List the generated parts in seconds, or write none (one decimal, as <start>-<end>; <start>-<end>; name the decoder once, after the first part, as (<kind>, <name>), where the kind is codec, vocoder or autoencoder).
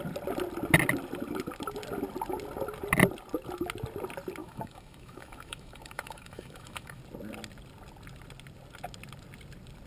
4.4-7.0 (autoencoder, DAC-VAE)